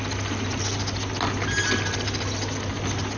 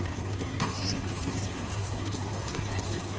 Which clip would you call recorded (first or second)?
first